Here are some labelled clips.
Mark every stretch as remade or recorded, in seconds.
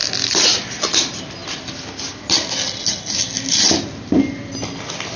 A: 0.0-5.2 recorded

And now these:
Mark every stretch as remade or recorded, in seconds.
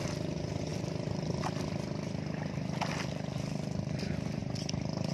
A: 0.0-0.7 recorded; 0.7-1.4 remade; 1.4-4.4 recorded; 4.4-5.1 remade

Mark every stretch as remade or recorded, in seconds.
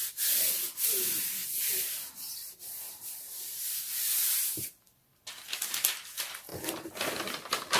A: 0.0-1.4 recorded; 1.4-4.5 remade; 4.5-7.8 recorded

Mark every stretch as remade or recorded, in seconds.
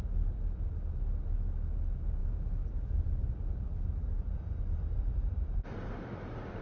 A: 0.0-5.2 recorded; 5.2-5.9 remade; 5.9-6.6 recorded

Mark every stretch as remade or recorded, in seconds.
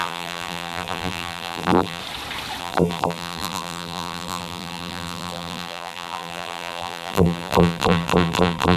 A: 0.0-2.0 remade; 2.0-2.6 recorded; 2.6-8.8 remade